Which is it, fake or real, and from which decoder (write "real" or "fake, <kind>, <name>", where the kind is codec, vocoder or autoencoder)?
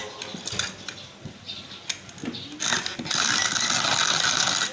real